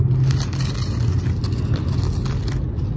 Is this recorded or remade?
recorded